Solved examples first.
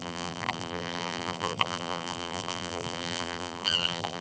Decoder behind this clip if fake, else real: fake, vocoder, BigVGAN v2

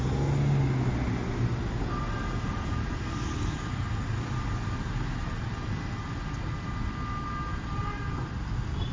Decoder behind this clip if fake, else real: real